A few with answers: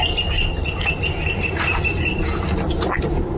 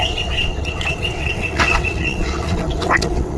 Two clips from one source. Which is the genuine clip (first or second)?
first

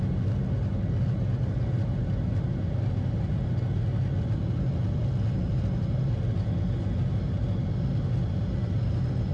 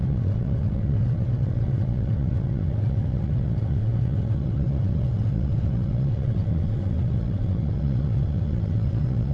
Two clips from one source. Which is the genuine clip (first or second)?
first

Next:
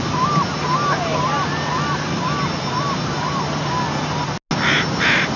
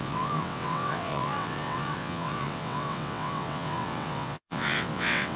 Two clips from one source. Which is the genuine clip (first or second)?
first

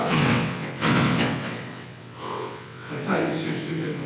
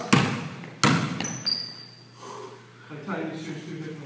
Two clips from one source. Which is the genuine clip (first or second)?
second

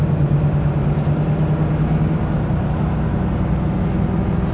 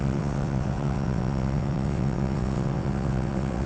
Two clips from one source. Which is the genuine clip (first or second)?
first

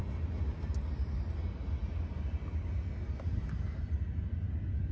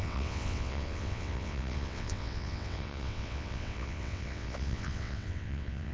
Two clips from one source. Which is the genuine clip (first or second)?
first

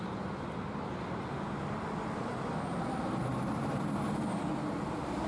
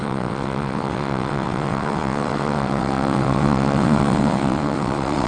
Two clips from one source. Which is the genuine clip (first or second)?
first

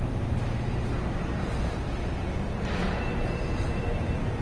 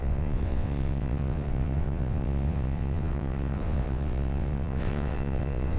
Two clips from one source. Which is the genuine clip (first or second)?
first